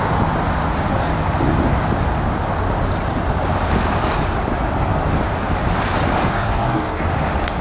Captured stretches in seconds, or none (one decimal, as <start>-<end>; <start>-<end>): 0.0-6.3; 7.0-7.6